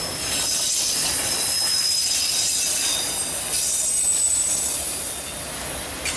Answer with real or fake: real